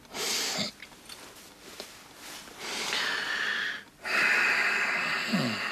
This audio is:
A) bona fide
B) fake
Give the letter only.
A